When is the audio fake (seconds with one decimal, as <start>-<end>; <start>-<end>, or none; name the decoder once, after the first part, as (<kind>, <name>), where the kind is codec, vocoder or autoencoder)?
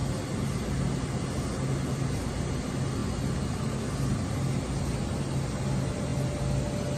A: none